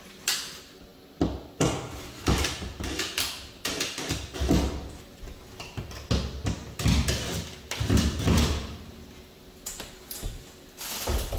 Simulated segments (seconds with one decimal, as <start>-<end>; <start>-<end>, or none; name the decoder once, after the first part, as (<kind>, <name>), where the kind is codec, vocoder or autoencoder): none